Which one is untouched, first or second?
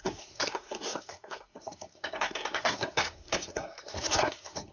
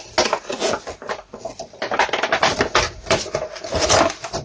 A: second